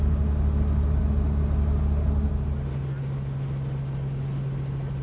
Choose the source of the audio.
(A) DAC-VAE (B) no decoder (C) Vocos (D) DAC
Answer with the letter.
B